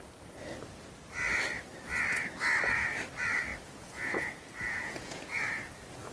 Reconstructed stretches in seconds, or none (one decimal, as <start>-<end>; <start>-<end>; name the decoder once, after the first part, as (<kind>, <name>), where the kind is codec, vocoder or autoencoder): 3.5-5.4 (vocoder, Vocos)